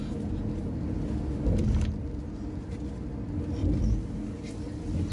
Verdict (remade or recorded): recorded